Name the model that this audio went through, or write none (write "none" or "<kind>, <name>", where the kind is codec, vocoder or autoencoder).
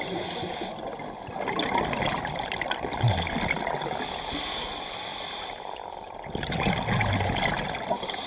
none